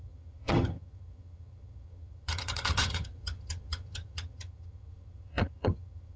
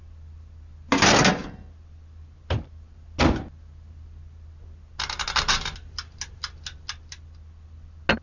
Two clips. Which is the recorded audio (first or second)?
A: second